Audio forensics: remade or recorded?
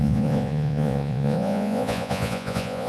remade